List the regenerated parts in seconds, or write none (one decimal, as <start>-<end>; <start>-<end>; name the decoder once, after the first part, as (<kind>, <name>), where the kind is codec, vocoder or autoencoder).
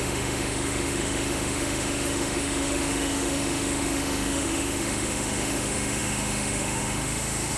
0.0-7.6 (autoencoder, DAC-VAE)